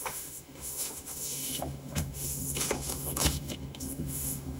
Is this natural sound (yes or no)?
no